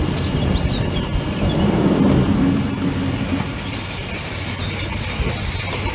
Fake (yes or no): no